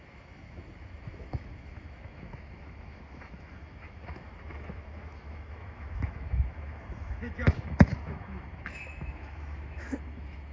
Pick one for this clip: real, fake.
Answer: fake